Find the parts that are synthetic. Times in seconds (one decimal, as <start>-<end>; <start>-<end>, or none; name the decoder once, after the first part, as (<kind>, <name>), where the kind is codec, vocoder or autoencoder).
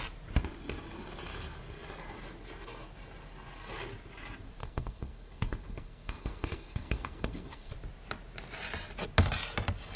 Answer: 4.6-7.7 (codec, SNAC)